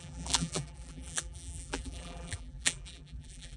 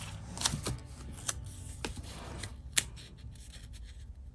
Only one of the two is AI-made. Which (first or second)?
first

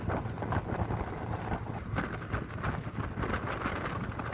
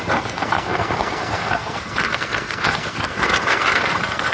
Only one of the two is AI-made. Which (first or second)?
second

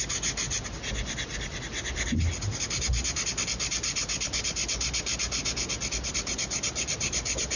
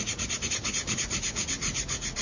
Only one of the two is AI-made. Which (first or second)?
second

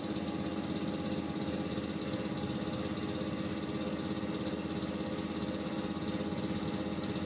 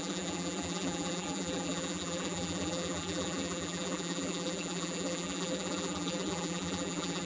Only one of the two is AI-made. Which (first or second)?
second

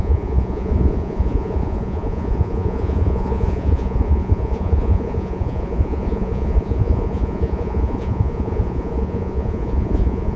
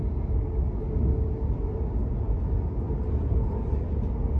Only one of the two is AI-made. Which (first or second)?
first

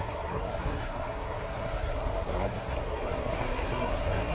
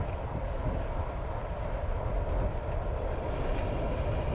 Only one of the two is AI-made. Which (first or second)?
first